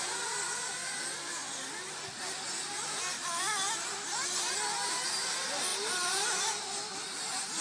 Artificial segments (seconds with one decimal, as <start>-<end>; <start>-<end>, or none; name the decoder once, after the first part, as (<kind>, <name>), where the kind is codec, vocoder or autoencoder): none